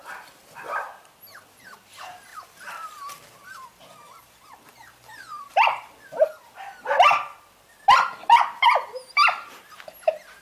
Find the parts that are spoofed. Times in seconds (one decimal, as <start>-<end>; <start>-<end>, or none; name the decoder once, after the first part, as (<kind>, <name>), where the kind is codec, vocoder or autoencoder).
2.3-6.3 (vocoder, BigVGAN v2)